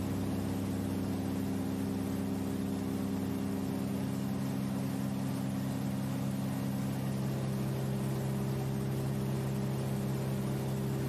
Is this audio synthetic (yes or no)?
no